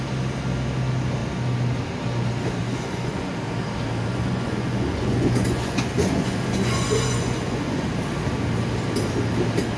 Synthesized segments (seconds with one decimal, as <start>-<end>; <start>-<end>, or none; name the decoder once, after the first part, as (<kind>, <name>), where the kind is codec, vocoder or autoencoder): 2.6-3.3 (vocoder, Vocos); 4.1-7.9